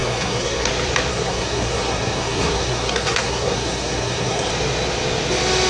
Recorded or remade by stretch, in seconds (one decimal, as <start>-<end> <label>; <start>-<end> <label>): 0.0-0.7 remade; 0.7-1.1 recorded; 1.1-4.5 remade; 4.5-5.7 recorded